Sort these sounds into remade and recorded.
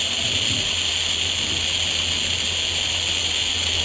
recorded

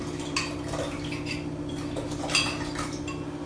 recorded